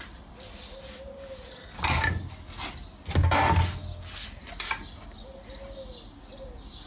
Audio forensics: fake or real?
real